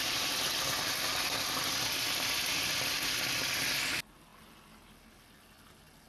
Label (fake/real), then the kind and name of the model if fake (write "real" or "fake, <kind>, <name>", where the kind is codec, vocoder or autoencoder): real